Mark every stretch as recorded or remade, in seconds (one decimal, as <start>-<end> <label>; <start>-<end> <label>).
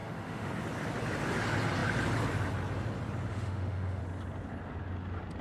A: 0.0-0.5 remade; 0.5-3.3 recorded; 3.3-4.0 remade; 4.0-5.4 recorded